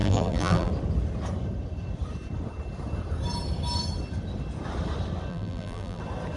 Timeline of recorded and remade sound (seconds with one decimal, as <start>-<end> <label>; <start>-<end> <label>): 0.0-0.7 remade; 0.7-5.3 recorded; 5.3-6.0 remade; 6.0-6.4 recorded